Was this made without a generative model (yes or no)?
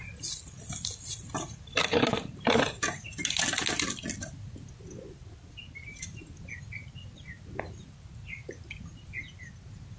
yes